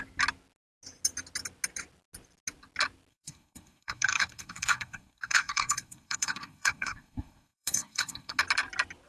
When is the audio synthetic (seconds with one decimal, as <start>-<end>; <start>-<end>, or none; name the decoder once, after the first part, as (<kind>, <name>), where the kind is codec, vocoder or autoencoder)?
3.1-8.4 (codec, SNAC)